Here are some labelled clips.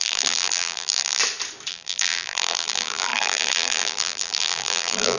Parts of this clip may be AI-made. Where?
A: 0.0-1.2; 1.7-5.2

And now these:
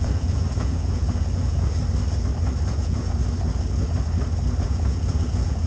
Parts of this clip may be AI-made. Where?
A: 0.0-1.8; 2.7-3.2; 4.6-5.7

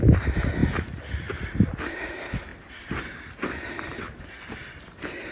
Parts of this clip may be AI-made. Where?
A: none

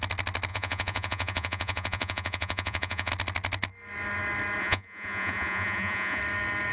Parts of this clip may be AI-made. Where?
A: 0.5-3.1; 4.6-6.2